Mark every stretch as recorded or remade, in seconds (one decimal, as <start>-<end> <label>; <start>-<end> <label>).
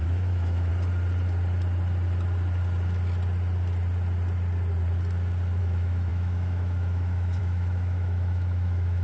0.0-0.7 remade; 0.7-5.6 recorded; 5.6-9.0 remade